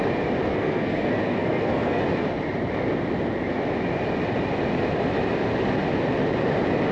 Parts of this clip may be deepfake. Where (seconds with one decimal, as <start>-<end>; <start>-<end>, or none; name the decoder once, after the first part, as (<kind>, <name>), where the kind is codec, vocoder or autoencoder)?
0.5-2.0 (codec, SNAC)